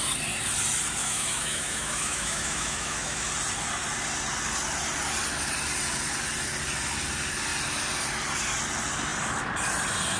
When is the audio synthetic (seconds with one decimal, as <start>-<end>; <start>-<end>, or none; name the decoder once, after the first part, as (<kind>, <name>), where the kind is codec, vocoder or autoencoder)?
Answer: 1.0-3.3 (autoencoder, DAC-VAE)